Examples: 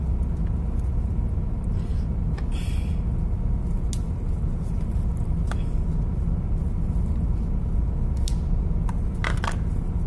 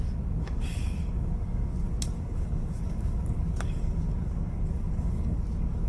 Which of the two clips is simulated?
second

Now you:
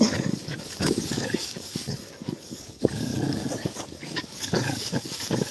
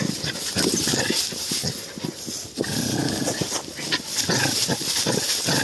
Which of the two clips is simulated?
first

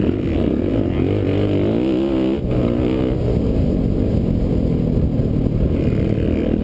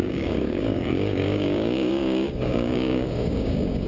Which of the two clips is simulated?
second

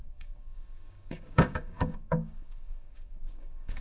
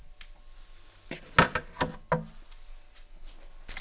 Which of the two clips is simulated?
first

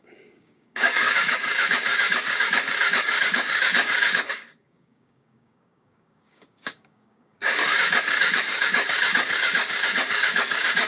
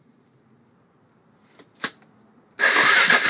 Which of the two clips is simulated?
first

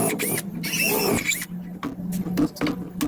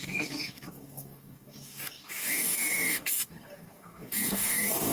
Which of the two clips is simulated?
second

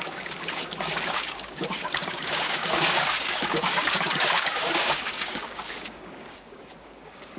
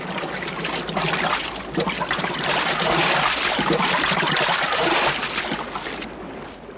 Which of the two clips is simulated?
first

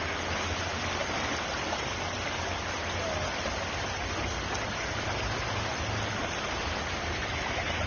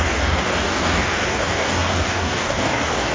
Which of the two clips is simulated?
second